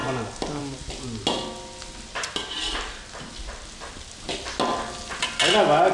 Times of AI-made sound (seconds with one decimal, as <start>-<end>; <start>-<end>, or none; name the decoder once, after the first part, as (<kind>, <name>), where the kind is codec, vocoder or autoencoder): none